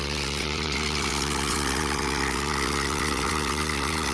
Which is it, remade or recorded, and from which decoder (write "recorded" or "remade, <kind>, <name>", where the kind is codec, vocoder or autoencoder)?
remade, vocoder, WaveNeXt